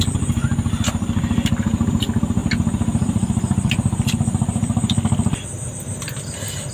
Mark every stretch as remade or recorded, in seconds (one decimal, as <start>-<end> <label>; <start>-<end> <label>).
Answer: 0.0-6.7 recorded